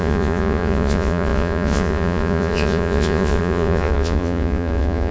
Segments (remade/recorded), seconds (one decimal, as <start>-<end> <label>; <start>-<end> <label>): 0.0-5.1 remade